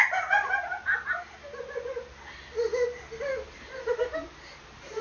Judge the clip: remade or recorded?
recorded